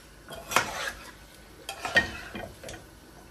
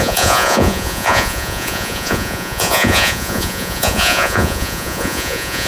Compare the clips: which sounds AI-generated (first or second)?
second